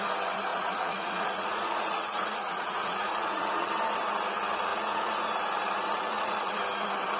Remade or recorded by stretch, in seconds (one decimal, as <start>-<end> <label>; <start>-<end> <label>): 0.0-0.5 recorded; 0.5-3.7 remade; 3.7-4.7 recorded; 4.7-5.3 remade; 5.3-6.1 recorded; 6.1-6.6 remade; 6.6-7.2 recorded